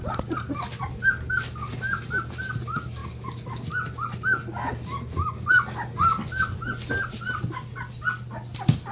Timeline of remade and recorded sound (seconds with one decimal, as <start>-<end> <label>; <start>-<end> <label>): 0.0-8.9 recorded